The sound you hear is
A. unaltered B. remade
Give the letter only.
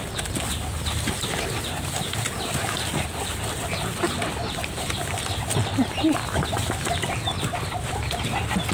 A